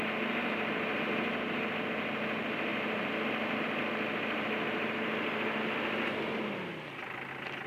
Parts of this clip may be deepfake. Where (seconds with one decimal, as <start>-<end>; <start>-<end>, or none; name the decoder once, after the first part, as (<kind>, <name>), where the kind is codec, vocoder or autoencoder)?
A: none